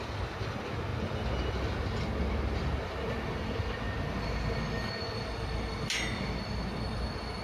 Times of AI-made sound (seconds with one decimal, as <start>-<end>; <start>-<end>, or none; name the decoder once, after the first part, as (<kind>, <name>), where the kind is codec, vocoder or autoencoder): none